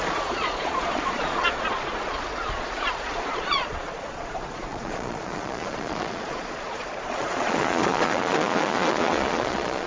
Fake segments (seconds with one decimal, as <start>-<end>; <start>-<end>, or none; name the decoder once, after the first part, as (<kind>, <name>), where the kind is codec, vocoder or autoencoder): 0.0-9.9 (vocoder, Vocos)

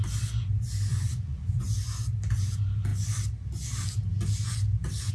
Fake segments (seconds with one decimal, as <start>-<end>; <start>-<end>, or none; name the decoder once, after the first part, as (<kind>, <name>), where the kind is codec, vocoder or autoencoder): 0.9-1.7 (vocoder, Vocos)

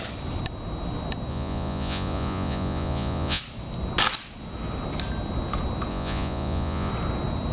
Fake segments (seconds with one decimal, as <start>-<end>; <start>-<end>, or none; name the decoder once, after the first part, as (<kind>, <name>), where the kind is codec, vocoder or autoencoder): 1.3-3.4 (vocoder, Vocos); 5.9-6.9

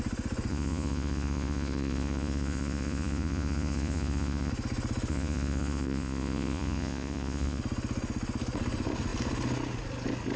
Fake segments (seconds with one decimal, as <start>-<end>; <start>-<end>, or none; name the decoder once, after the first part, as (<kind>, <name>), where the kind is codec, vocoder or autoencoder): 0.5-4.5 (vocoder, Vocos); 5.1-7.6

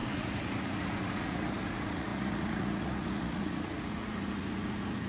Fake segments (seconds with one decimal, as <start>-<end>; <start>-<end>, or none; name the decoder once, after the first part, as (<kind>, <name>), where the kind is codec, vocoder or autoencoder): 0.0-5.1 (vocoder, Vocos)

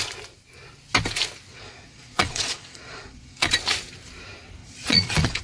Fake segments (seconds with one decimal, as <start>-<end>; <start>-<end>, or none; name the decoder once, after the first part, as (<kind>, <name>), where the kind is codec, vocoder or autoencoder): 1.5-3.5 (vocoder, Vocos); 4.6-5.4

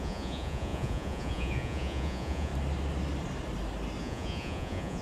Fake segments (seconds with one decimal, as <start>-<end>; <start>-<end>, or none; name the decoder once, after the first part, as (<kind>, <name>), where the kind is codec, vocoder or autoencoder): 0.0-2.5 (vocoder, Vocos); 4.0-5.0

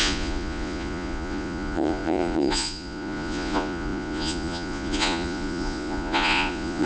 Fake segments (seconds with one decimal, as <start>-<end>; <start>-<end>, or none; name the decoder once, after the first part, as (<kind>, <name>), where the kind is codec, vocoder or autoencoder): 0.0-6.9 (vocoder, Vocos)